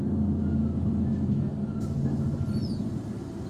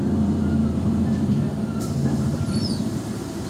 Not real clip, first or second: second